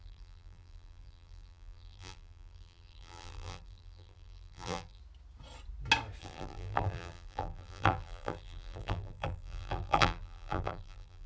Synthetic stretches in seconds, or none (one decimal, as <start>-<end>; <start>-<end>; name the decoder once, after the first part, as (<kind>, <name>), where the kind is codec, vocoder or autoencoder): 0.0-5.0 (vocoder, BigVGAN v2); 6.2-11.3